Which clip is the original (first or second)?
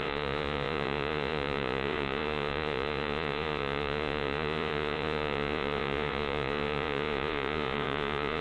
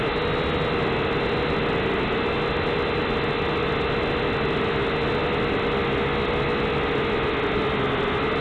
second